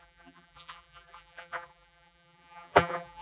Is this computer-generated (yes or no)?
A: yes